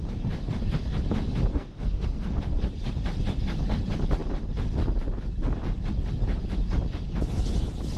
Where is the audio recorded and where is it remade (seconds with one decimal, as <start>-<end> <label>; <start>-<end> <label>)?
0.0-1.5 recorded; 1.5-2.4 remade; 2.4-8.0 recorded